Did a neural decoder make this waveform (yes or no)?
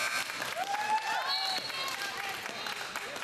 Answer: no